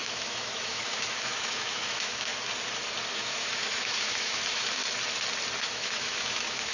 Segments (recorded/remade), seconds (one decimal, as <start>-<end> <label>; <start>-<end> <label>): 0.0-2.3 remade; 2.3-3.1 recorded; 3.1-4.8 remade; 4.8-5.6 recorded; 5.6-6.7 remade